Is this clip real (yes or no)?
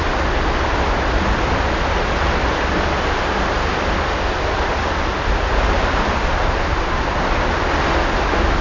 yes